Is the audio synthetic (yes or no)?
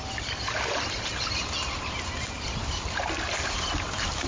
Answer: yes